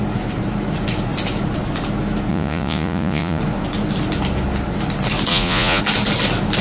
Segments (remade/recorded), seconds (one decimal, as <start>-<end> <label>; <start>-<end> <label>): 0.0-2.3 recorded; 2.3-3.4 remade; 3.4-5.3 recorded; 5.3-5.8 remade; 5.8-6.6 recorded